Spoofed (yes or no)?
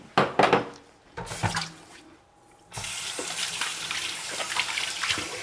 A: no